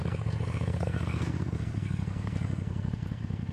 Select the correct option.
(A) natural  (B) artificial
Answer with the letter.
B